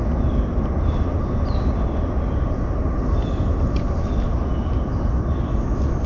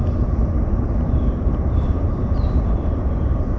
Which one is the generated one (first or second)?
second